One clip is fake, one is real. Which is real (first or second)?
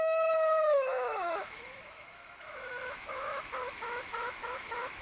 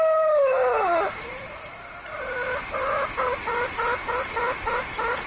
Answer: second